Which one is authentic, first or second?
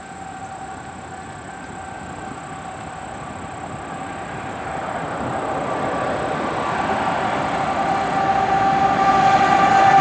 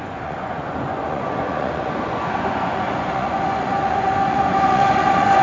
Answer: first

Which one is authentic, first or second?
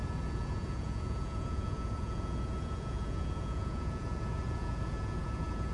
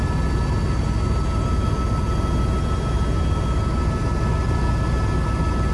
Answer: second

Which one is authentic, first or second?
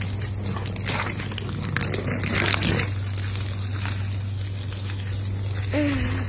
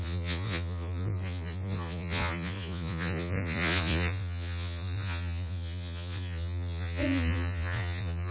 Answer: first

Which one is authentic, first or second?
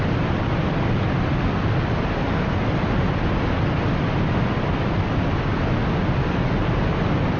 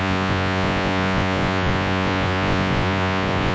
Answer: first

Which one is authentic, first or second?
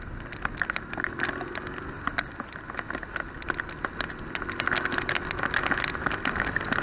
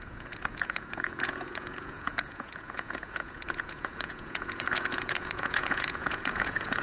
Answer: first